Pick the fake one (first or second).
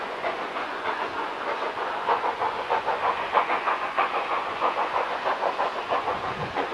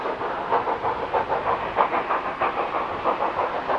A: first